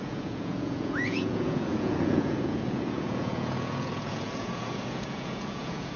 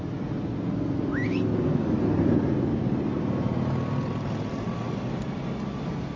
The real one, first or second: second